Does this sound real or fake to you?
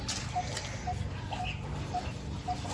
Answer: real